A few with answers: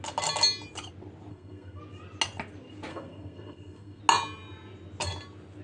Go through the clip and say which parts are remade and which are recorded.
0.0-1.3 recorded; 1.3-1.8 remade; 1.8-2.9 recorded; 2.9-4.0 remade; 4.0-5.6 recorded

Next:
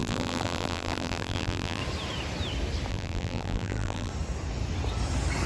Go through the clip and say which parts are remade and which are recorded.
0.0-1.8 remade; 1.8-2.9 recorded; 2.9-4.1 remade; 4.1-5.5 recorded

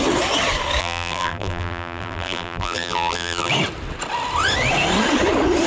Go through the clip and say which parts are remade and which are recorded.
0.0-0.8 recorded; 0.8-3.5 remade; 3.5-5.7 recorded

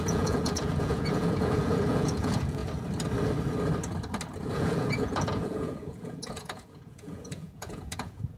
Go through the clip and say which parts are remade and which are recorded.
0.0-2.6 remade; 2.6-4.5 recorded; 4.5-8.4 remade

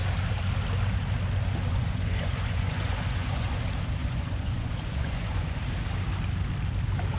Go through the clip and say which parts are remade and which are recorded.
0.0-1.7 recorded; 1.7-3.6 remade; 3.6-4.0 recorded; 4.0-5.6 remade; 5.6-7.2 recorded

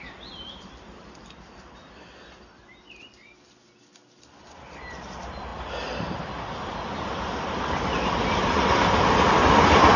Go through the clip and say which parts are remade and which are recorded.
0.0-10.0 recorded